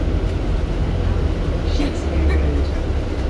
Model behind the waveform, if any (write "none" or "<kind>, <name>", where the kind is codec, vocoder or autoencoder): none